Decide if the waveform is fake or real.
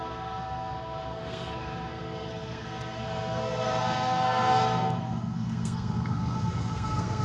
fake